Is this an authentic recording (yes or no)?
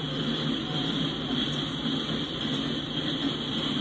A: yes